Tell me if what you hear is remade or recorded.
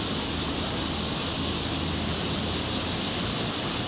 recorded